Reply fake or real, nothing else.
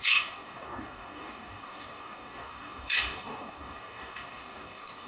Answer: fake